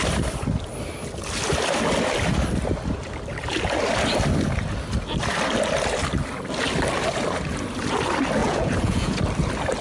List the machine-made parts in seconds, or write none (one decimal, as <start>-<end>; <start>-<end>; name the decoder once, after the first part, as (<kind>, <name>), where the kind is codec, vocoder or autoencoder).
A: 8.4-9.2 (vocoder, Vocos)